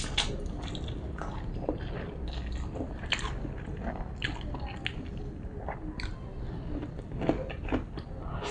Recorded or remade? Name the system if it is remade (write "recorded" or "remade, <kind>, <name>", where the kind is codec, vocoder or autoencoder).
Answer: recorded